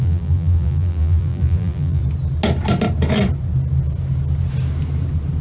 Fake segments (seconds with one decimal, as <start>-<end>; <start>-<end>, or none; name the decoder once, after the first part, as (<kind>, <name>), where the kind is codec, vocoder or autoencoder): 0.0-2.0 (vocoder, BigVGAN v2)

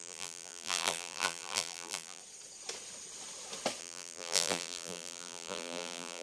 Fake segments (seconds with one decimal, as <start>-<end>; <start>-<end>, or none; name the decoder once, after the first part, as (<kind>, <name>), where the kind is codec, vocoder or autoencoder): 0.0-2.2 (vocoder, BigVGAN v2); 3.8-6.2

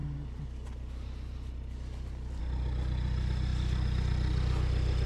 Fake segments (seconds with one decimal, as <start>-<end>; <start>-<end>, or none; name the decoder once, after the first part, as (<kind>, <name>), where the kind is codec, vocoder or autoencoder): none

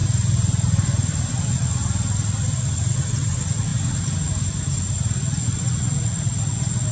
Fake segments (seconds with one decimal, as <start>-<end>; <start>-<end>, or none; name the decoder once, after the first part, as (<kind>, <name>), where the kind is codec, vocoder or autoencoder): 0.0-1.5 (vocoder, BigVGAN v2); 3.7-5.2

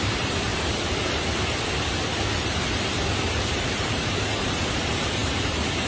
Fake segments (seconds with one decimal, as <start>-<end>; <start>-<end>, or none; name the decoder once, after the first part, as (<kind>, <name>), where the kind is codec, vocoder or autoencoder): 0.0-0.5 (vocoder, BigVGAN v2); 3.5-5.9

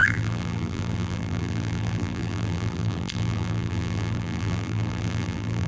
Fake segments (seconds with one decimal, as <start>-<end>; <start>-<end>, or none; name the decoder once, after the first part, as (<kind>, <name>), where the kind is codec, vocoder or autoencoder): 0.0-5.7 (vocoder, BigVGAN v2)

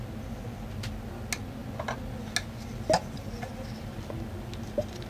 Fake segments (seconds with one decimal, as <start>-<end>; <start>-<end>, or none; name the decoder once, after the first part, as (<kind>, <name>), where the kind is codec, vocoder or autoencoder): none